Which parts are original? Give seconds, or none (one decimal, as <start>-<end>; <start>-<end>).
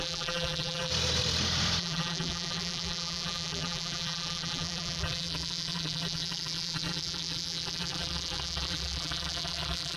0.9-1.8